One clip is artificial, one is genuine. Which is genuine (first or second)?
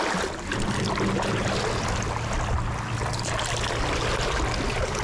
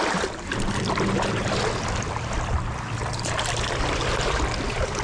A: first